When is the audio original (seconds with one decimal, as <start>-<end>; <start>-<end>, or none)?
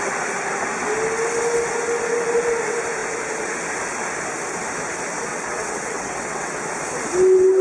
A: 0.0-5.3; 6.6-7.6